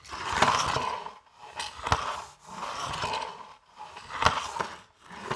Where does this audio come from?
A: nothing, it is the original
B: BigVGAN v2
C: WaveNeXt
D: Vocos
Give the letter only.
A